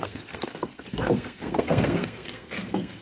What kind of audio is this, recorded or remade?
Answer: remade